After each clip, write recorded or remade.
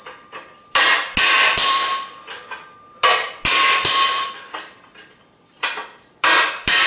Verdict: remade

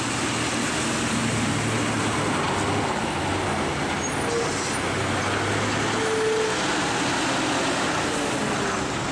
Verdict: recorded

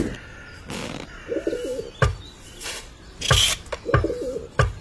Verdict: recorded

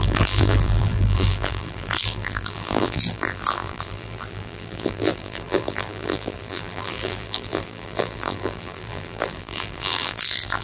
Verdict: remade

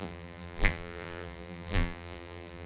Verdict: remade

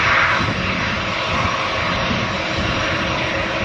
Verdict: remade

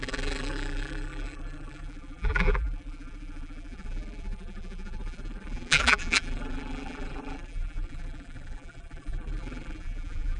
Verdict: remade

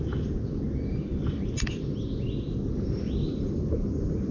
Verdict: recorded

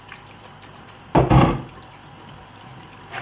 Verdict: recorded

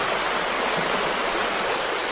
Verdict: recorded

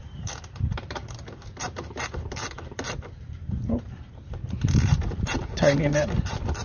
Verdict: remade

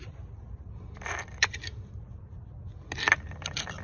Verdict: recorded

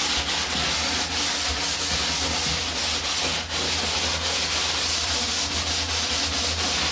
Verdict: recorded